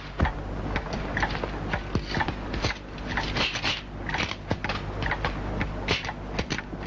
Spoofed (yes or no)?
no